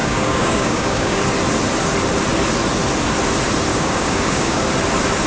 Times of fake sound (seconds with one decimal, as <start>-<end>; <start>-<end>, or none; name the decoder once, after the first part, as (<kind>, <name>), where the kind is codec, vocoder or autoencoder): 0.0-1.2 (codec, DAC); 3.7-4.6